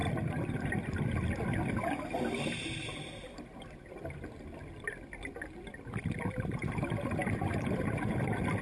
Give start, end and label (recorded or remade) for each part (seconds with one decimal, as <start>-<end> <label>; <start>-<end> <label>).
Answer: 0.0-8.6 recorded